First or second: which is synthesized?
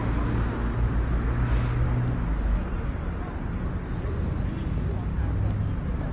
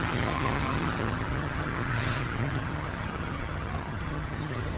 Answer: second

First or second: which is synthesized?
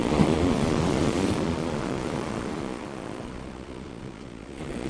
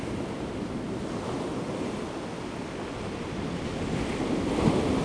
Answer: first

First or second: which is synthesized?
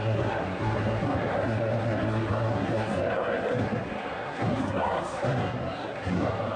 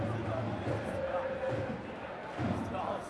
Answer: first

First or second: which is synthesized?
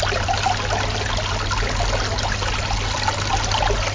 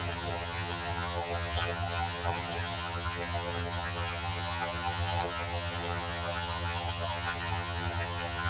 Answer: second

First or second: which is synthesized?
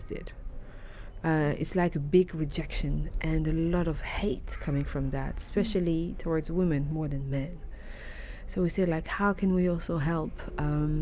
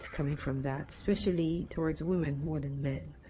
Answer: second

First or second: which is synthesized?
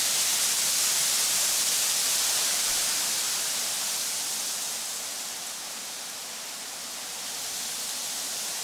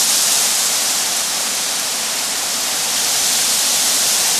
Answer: second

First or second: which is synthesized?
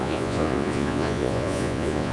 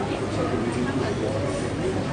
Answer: first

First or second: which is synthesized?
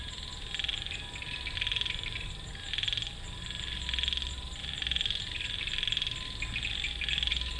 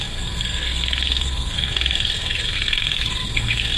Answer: second